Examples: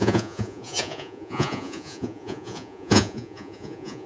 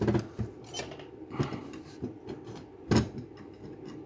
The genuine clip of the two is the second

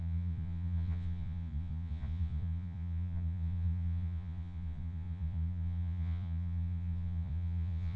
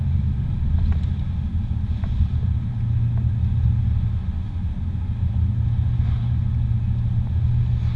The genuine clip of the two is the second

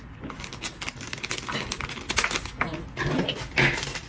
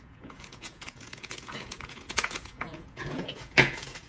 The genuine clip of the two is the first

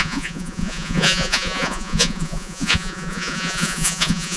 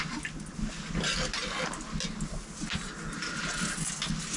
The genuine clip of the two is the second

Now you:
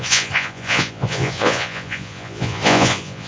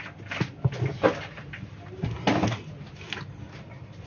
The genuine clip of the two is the second